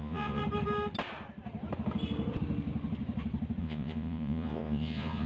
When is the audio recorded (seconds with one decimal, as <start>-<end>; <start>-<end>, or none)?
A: 0.4-3.6

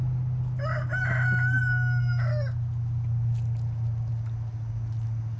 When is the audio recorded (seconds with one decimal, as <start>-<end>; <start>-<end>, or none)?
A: 0.0-5.4

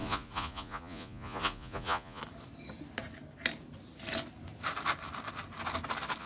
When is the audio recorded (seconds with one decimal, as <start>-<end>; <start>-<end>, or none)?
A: 2.2-6.2

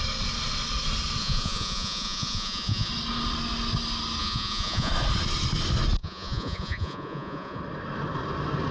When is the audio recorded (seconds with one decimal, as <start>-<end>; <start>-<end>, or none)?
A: 0.0-1.2; 2.9-4.2; 4.9-6.0; 7.6-8.7